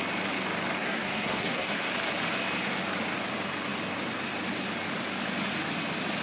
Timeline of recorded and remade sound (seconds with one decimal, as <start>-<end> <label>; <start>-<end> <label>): 0.0-0.8 recorded; 0.8-1.9 remade; 1.9-6.2 recorded